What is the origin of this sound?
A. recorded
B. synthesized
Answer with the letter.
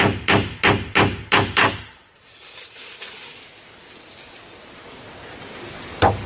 A